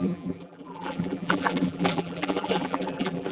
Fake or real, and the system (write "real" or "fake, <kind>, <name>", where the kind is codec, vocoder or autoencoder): fake, vocoder, BigVGAN v2